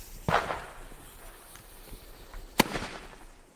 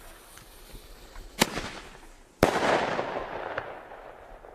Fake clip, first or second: first